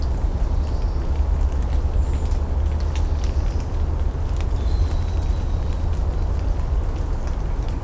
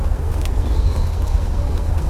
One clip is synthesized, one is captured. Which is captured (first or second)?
first